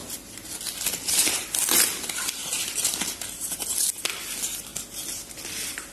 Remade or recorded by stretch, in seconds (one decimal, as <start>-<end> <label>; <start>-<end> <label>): 0.0-2.4 recorded; 2.4-3.9 remade; 3.9-5.9 recorded